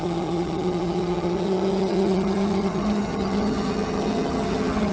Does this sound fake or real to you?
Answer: fake